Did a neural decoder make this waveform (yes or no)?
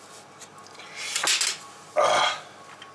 no